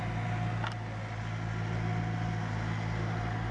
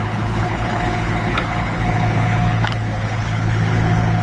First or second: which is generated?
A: second